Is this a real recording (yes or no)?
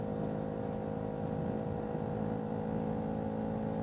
yes